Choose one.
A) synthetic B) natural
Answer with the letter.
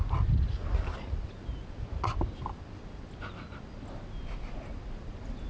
B